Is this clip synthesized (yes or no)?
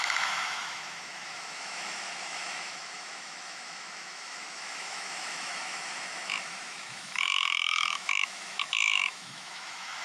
yes